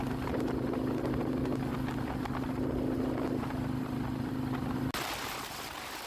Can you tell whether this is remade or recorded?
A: recorded